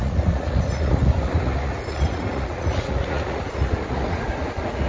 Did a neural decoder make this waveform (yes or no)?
yes